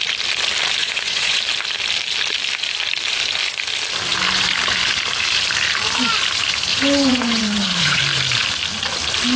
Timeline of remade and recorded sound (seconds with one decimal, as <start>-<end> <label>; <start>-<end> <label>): 0.0-0.8 recorded; 0.8-1.4 remade; 1.4-6.7 recorded; 6.7-8.0 remade; 8.0-9.4 recorded